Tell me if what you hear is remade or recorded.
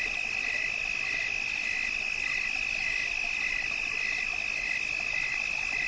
recorded